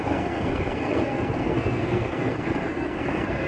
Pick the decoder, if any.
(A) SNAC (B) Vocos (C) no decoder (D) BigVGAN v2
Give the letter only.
A